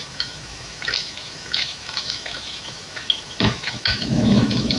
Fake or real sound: fake